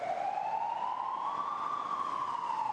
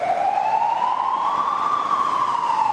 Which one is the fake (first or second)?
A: second